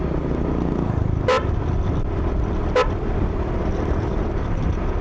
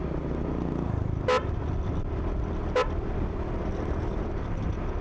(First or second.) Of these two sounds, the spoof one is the first